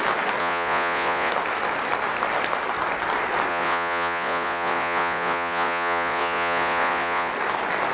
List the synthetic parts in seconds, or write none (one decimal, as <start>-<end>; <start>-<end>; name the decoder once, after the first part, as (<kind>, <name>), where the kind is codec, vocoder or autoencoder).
0.4-1.3 (vocoder, Vocos); 3.5-7.3